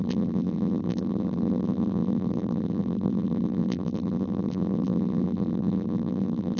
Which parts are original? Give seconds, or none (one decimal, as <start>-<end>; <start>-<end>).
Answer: none

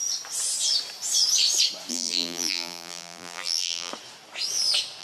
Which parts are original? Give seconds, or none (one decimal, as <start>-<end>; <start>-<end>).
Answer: 0.0-1.9; 3.9-5.0